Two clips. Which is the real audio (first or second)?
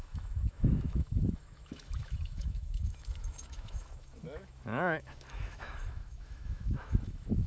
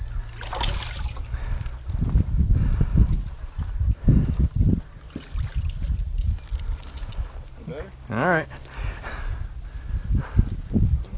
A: second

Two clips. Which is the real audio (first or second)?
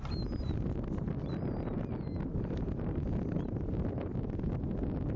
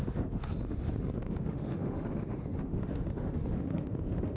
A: first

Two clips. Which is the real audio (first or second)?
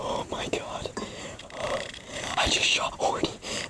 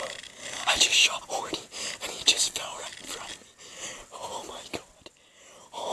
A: second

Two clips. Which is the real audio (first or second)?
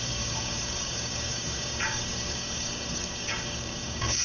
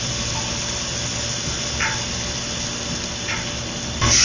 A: second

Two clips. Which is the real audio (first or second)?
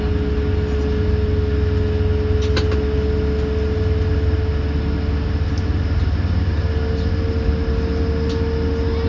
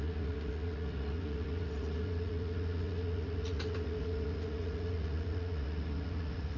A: first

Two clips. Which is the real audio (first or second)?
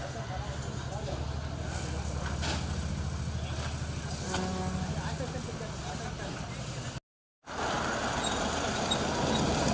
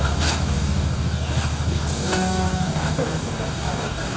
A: first